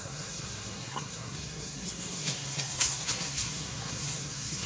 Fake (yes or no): yes